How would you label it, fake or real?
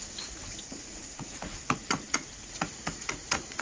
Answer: fake